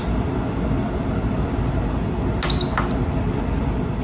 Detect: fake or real real